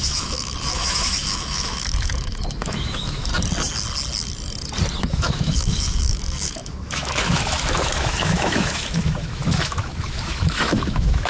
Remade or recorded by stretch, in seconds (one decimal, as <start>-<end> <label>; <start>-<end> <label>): 0.0-3.3 remade; 3.3-5.0 recorded; 5.0-11.3 remade